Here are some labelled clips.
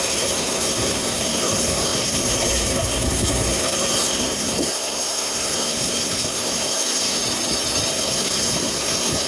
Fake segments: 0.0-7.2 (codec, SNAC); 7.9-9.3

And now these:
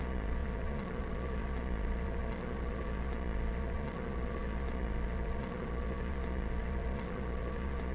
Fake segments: 0.0-7.9 (vocoder, Vocos)

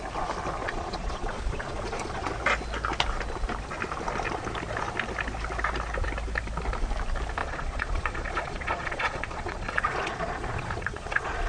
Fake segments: 0.6-2.3 (vocoder, Vocos); 7.4-11.5

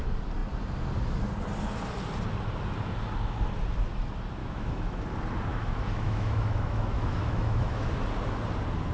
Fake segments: 4.4-5.0 (autoencoder, DAC-VAE); 5.5-7.9

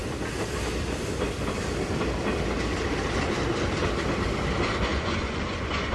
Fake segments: 4.9-5.9 (vocoder, Vocos)

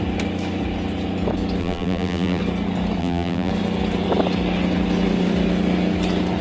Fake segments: 1.6-2.4 (vocoder, BigVGAN v2); 3.0-3.5

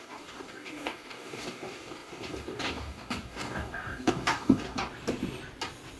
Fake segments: 0.0-4.8 (codec, DAC)

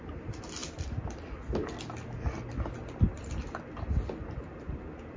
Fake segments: none